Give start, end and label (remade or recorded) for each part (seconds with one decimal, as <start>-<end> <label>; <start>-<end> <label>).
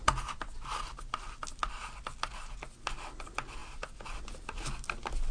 0.0-5.3 recorded